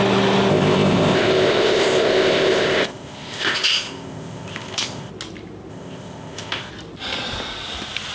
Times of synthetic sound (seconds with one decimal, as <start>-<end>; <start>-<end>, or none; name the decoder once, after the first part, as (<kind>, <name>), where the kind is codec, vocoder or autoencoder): 0.5-5.1 (codec, ZipCodec); 5.7-6.7